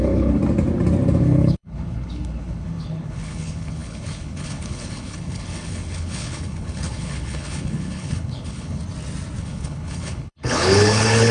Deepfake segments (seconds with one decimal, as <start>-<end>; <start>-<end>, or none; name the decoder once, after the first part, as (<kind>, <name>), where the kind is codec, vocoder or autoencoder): 0.0-0.4 (codec, HILCodec); 1.2-8.8; 9.4-11.3